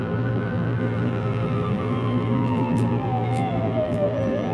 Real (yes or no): no